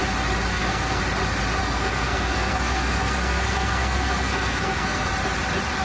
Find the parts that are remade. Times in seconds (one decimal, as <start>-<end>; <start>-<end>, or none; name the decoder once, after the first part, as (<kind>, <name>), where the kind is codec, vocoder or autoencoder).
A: 0.5-1.0 (codec, SNAC); 1.6-5.1